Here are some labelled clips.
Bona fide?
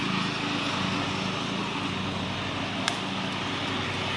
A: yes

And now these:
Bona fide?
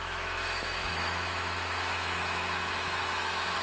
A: no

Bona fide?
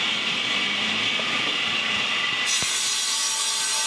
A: yes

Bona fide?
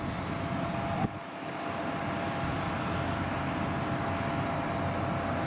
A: yes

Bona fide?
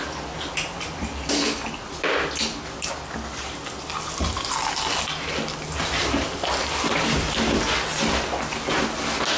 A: yes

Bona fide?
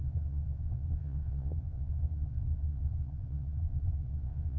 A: no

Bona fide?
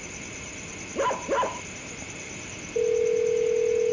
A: yes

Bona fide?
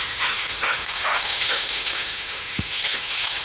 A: no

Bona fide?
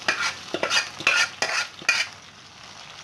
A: yes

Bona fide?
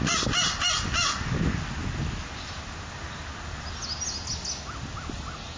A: yes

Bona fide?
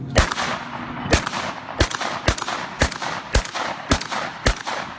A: yes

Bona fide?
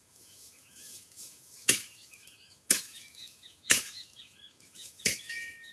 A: no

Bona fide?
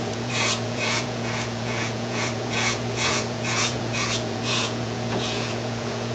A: no